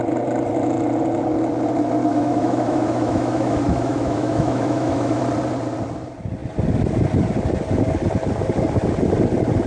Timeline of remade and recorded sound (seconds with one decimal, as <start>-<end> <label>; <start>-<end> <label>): 0.0-2.1 recorded; 2.1-5.2 remade; 5.2-9.7 recorded